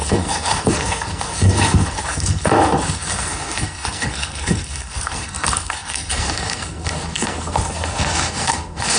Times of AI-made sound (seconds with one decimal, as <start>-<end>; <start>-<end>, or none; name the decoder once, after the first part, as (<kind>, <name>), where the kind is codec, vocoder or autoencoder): 0.0-9.0 (codec, SNAC)

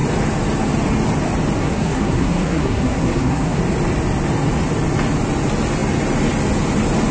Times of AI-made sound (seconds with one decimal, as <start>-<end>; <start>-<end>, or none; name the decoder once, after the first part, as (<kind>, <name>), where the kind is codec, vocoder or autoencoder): 1.6-3.6 (codec, SNAC)

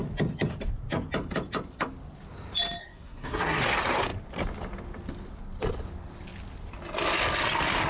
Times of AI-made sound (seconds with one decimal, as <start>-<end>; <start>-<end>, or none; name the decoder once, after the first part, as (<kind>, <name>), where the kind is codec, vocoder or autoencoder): 2.8-3.6 (codec, SNAC)

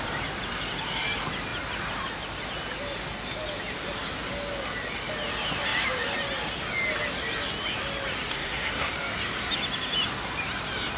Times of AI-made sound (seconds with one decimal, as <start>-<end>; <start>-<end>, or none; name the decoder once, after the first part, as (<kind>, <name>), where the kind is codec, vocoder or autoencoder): 8.3-8.9 (codec, SNAC)

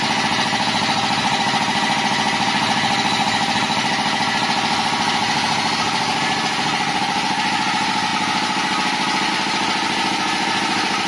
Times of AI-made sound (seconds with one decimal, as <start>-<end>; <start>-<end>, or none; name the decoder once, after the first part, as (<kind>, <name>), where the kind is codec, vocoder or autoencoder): none